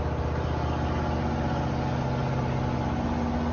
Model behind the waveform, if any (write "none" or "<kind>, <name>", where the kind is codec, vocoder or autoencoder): none